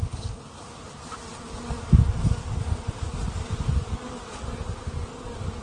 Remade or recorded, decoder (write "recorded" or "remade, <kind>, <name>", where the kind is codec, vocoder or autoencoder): recorded